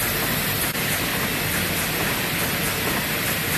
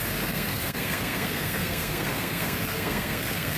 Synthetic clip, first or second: second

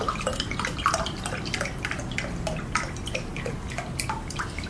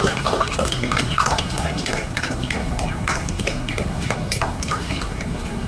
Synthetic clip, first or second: second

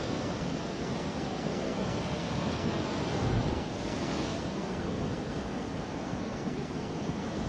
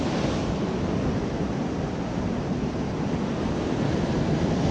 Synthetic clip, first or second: first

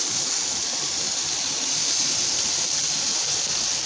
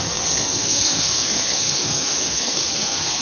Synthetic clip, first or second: second